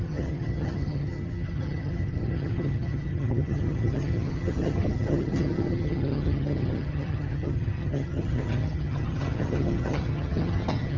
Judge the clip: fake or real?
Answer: fake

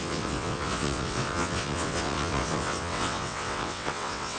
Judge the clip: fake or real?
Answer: fake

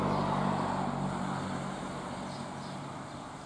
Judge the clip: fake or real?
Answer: real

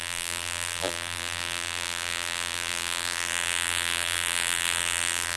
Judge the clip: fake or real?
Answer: fake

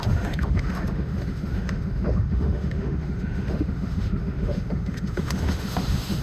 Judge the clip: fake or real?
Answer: fake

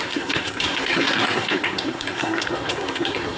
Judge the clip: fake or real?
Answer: fake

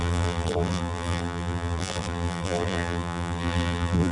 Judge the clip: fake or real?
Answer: fake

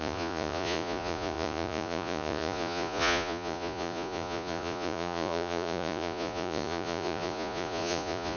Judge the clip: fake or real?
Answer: fake